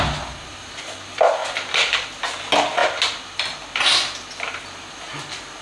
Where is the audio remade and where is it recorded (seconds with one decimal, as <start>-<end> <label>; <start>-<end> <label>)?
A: 0.0-1.4 recorded; 1.4-2.2 remade; 2.2-5.6 recorded